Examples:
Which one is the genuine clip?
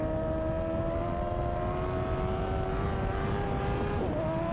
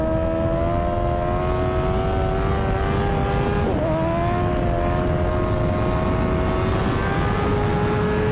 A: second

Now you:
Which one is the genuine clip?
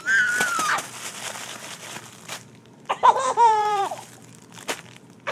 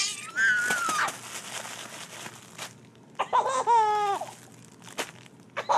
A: second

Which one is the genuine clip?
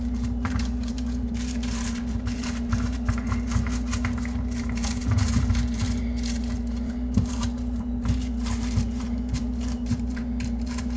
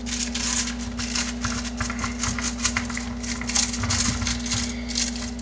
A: second